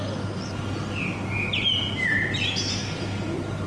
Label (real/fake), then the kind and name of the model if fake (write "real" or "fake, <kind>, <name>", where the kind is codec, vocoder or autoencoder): real